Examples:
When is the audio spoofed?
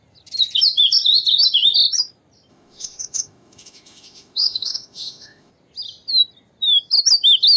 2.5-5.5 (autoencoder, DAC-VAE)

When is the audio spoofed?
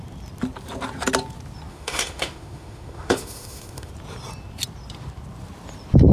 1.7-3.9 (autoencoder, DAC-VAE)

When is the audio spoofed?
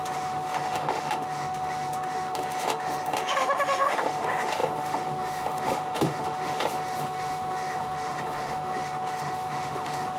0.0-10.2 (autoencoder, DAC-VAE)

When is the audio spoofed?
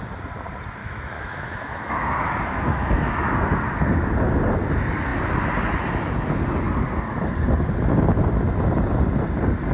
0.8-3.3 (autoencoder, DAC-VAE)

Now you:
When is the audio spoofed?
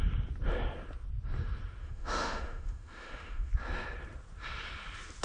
1.8-3.5 (autoencoder, DAC-VAE)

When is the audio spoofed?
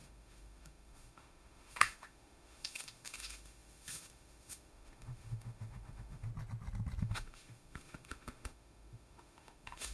0.0-6.3 (autoencoder, DAC-VAE); 7.0-9.9